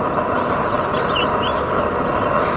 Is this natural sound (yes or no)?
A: yes